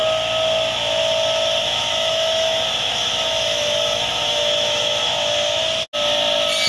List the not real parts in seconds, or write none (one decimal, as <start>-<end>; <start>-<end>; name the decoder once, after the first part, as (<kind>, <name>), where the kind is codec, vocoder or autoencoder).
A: 1.6-5.6 (autoencoder, DAC-VAE)

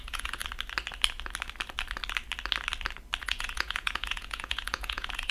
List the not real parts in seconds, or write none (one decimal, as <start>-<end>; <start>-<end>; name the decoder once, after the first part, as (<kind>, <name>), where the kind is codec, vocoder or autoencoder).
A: 0.0-0.4 (vocoder, Vocos); 3.2-5.3

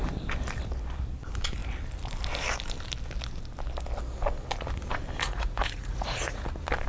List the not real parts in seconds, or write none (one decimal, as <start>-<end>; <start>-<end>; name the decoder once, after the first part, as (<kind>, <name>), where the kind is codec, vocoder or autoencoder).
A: 5.2-6.4 (vocoder, Vocos)

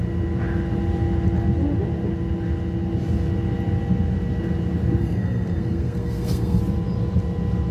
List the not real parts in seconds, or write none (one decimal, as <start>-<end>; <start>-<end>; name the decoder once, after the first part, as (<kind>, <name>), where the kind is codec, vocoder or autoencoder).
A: 5.0-6.6 (codec, SNAC)